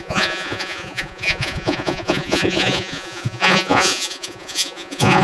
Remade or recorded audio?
remade